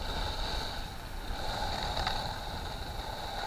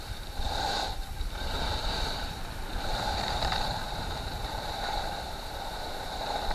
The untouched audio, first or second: first